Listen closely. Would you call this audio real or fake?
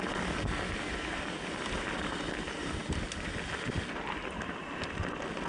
real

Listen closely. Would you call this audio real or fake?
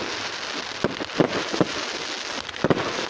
real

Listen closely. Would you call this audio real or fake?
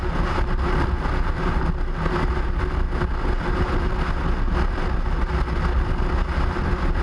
real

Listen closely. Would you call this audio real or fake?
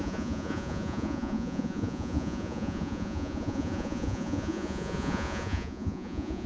fake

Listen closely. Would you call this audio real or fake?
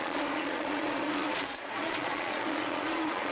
fake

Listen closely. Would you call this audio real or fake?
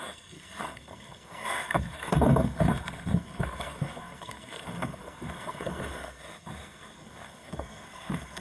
fake